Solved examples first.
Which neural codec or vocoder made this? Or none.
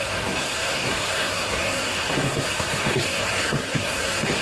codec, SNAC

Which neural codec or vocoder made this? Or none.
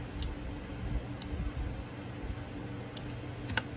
none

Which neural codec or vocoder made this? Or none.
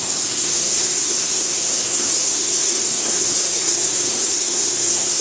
codec, SNAC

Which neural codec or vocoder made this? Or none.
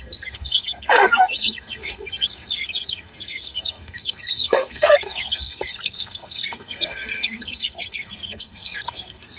codec, SNAC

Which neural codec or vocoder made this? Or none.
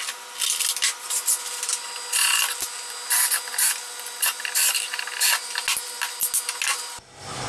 none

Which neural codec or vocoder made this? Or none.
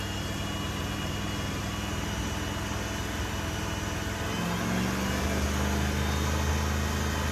none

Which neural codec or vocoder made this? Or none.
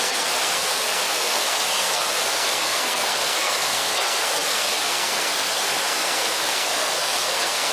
codec, SNAC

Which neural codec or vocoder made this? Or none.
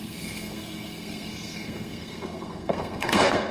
codec, SNAC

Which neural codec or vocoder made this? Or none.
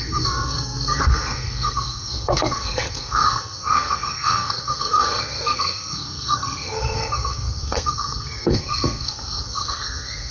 codec, SNAC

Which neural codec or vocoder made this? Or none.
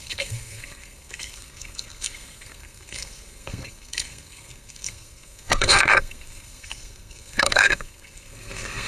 codec, SNAC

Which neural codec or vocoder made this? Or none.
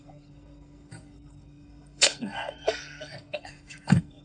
codec, SNAC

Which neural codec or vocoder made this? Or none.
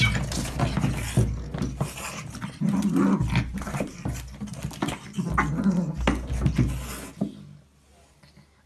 none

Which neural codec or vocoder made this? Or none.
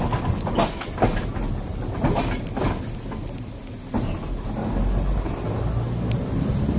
none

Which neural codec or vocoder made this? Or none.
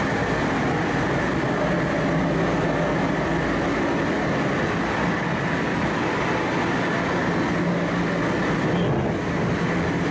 none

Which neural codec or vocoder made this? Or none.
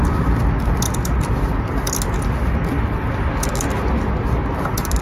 none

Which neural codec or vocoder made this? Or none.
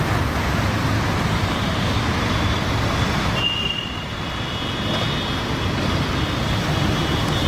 none